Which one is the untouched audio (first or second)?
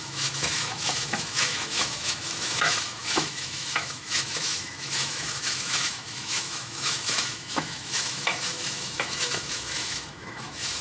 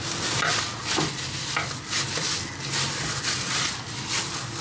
second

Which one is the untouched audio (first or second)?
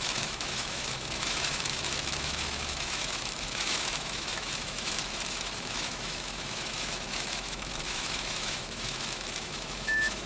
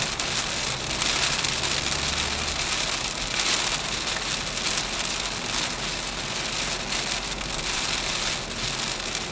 second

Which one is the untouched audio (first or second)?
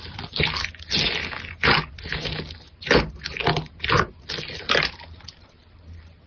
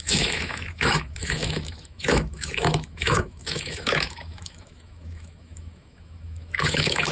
first